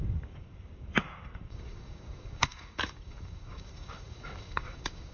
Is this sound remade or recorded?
remade